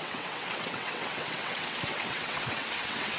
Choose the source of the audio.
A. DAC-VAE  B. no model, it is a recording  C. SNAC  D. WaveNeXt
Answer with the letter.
D